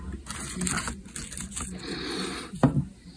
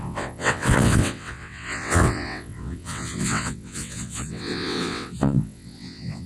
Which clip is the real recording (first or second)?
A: first